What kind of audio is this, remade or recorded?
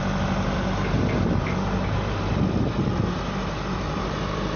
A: recorded